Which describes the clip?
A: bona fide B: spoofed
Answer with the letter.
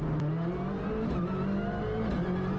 A